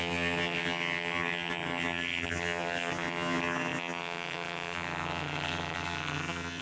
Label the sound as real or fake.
fake